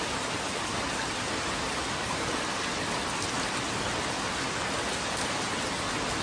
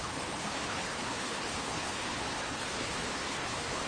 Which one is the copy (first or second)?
second